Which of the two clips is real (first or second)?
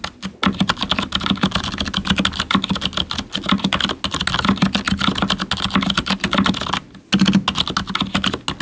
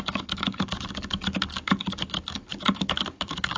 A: first